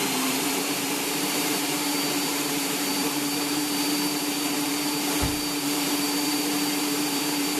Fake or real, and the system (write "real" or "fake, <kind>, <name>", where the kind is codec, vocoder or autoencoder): fake, vocoder, BigVGAN v2